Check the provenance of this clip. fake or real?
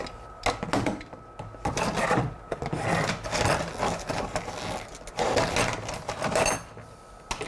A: real